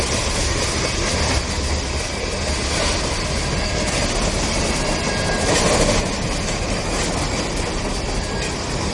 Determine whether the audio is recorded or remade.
recorded